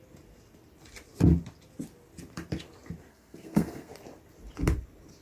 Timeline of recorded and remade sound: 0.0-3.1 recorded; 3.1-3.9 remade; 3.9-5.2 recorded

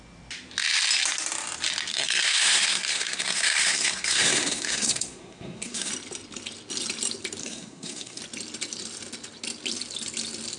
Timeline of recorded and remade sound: 0.0-1.9 recorded; 1.9-5.9 remade; 5.9-7.4 recorded; 7.4-8.2 remade; 8.2-10.6 recorded

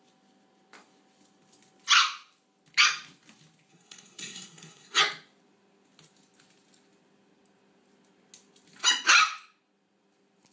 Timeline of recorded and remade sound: 0.0-3.7 recorded; 3.7-5.0 remade; 5.0-10.5 recorded

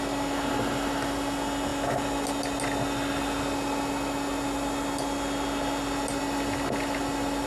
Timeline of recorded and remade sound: 0.0-7.5 recorded

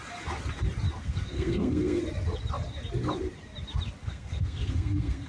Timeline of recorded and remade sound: 0.0-1.0 recorded; 1.0-2.0 remade; 2.0-4.0 recorded; 4.0-5.3 remade

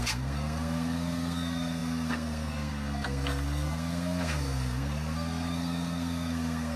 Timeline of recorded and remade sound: 0.0-6.8 remade

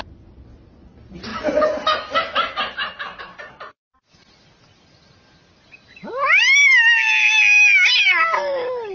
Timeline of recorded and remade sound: 0.0-8.9 recorded